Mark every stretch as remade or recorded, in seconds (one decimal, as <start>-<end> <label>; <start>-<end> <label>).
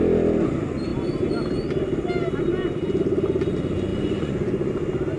0.0-3.9 recorded; 3.9-4.7 remade; 4.7-5.2 recorded